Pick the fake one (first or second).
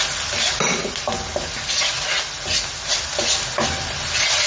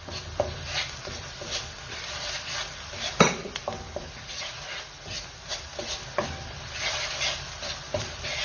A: second